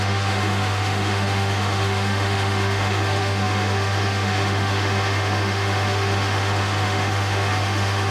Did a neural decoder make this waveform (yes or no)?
yes